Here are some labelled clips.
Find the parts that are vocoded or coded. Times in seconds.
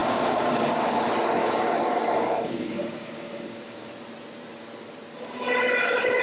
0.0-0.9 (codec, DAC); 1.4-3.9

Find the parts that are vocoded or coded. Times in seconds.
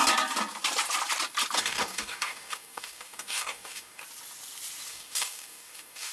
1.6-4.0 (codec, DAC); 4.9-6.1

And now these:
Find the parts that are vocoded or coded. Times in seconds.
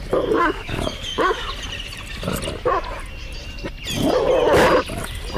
0.4-1.5 (codec, DAC)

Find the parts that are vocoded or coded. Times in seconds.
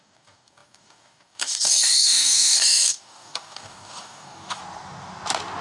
0.0-4.6 (codec, DAC)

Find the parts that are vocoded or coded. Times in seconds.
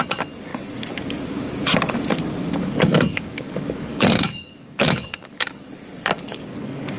0.5-1.2 (codec, DAC); 2.7-7.0